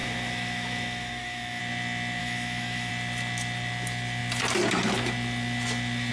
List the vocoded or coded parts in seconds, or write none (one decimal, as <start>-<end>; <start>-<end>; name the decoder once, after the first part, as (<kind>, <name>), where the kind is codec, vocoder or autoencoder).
0.0-1.6 (autoencoder, DAC-VAE); 2.2-2.9